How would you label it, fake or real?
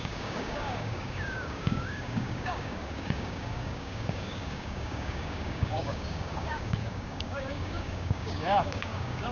fake